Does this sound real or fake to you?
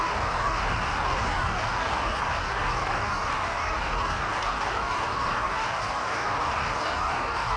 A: fake